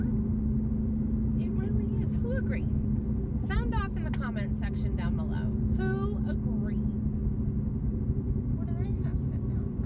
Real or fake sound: real